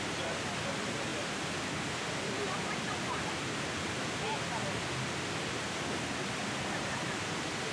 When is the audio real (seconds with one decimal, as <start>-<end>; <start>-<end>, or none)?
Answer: 0.0-7.7